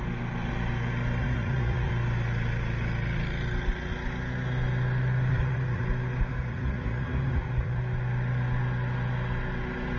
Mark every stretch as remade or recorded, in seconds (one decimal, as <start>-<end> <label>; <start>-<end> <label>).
0.0-1.2 recorded; 1.2-1.9 remade; 1.9-5.3 recorded; 5.3-5.8 remade; 5.8-6.3 recorded; 6.3-7.8 remade; 7.8-10.0 recorded